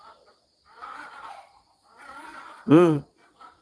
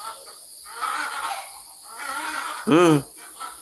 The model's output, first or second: first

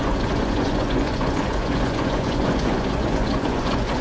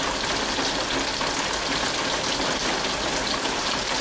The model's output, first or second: first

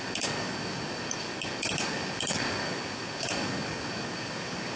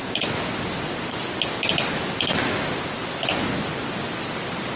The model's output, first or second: first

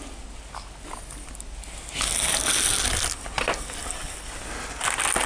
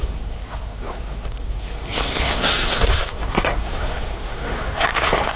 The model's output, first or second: second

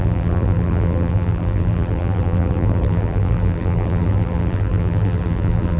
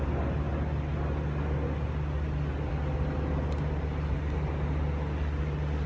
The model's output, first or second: first